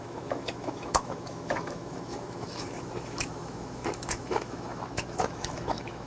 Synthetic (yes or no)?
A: yes